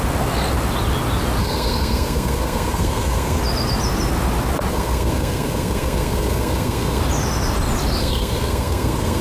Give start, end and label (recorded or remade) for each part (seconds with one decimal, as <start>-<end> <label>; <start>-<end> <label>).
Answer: 0.0-1.4 recorded; 1.4-3.4 remade; 3.4-4.7 recorded; 4.7-7.0 remade; 7.0-8.0 recorded; 8.0-9.2 remade

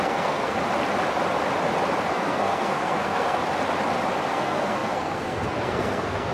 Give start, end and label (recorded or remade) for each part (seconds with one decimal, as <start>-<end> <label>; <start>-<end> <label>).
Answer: 0.0-0.6 remade; 0.6-2.1 recorded; 2.1-3.4 remade; 3.4-4.3 recorded; 4.3-6.3 remade

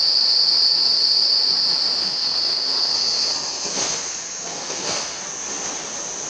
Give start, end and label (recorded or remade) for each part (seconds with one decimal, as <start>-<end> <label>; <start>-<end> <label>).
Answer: 0.0-2.0 recorded; 2.0-5.2 remade; 5.2-6.3 recorded

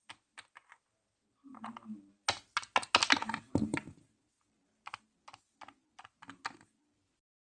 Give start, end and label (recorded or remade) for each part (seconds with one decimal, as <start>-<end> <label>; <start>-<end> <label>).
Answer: 0.0-7.5 recorded

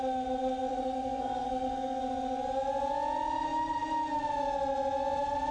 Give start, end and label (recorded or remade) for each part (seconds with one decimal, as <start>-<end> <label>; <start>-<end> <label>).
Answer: 0.0-0.7 recorded; 0.7-2.0 remade; 2.0-5.5 recorded

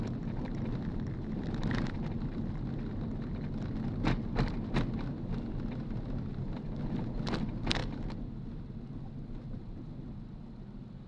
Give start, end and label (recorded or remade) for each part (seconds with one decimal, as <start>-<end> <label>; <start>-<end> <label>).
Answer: 0.0-11.1 recorded